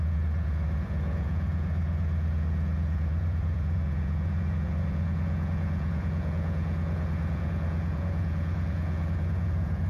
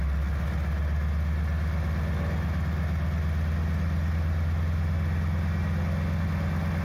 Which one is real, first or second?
second